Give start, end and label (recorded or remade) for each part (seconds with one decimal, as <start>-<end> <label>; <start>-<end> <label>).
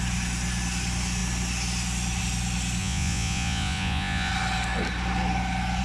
0.0-2.8 recorded; 2.8-4.3 remade; 4.3-5.8 recorded